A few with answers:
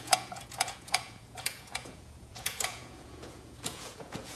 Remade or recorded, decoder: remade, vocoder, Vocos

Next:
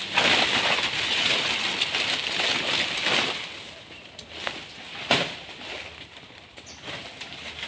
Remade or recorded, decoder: recorded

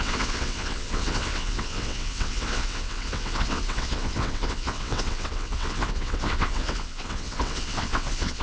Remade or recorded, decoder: remade, vocoder, WaveNeXt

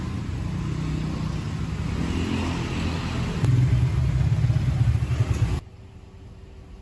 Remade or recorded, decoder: recorded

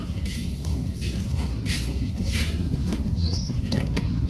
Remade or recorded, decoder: remade, codec, SNAC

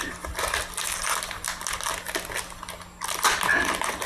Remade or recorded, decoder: recorded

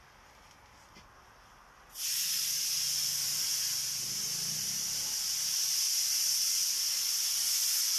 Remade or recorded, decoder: recorded